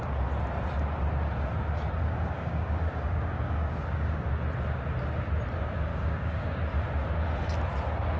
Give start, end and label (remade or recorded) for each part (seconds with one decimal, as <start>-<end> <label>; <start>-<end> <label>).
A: 0.0-2.0 recorded; 2.0-4.3 remade; 4.3-5.9 recorded; 5.9-6.6 remade; 6.6-8.2 recorded